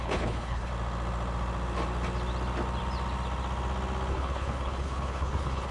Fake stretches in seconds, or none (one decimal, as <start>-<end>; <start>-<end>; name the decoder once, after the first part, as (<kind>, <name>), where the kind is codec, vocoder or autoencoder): 0.0-0.7 (codec, HILCodec); 4.1-5.7

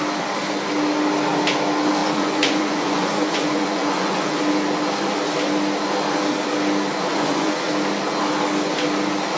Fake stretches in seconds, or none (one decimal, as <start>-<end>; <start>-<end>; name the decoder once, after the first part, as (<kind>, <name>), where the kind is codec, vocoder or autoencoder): 2.0-4.4 (vocoder, Vocos); 7.1-7.7

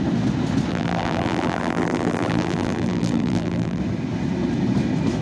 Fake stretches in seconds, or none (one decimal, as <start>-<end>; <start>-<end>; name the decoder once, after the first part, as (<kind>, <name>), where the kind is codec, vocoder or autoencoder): 0.7-3.8 (vocoder, BigVGAN v2)

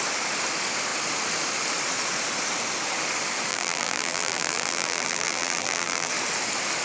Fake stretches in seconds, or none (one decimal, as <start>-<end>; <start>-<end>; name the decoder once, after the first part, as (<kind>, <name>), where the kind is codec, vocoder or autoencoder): 3.5-6.1 (vocoder, BigVGAN v2)